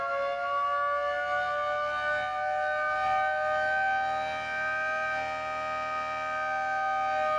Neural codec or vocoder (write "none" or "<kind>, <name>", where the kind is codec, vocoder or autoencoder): none